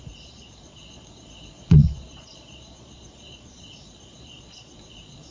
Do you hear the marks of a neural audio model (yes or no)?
yes